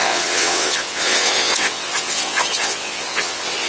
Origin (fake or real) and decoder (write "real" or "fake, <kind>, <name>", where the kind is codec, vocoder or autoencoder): fake, vocoder, WaveNeXt